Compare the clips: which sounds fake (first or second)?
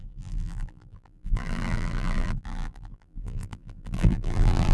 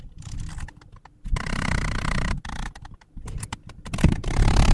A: first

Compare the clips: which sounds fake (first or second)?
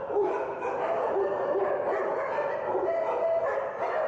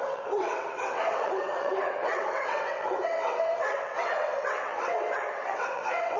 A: second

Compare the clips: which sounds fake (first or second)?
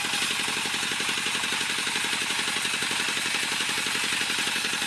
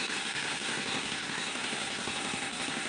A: second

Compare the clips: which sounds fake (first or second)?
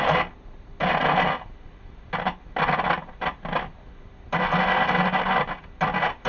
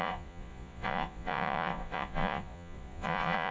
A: second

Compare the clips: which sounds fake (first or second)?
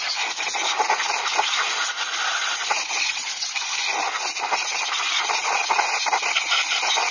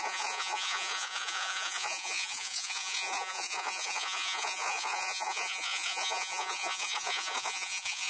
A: second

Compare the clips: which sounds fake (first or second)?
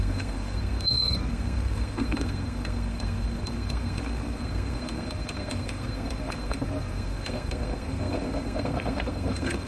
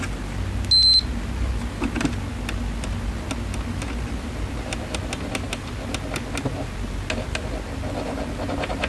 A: first